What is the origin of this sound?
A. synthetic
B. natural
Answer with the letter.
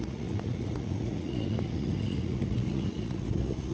A